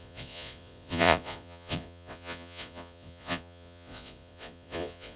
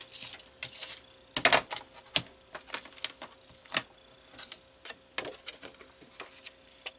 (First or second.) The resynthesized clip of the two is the first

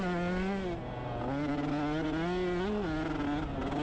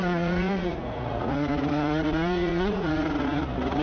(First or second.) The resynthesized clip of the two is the second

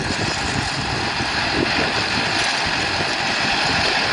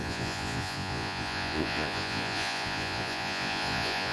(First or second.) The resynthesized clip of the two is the second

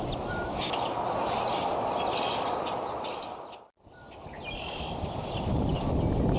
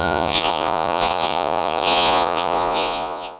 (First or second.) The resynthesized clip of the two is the second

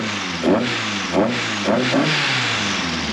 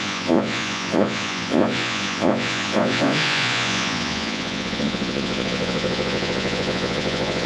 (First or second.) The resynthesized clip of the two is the second